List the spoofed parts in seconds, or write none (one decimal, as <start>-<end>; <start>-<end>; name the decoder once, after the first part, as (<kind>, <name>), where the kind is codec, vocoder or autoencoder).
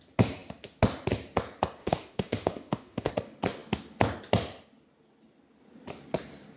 1.8-3.1 (autoencoder, DAC-VAE)